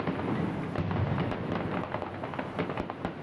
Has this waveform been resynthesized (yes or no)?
no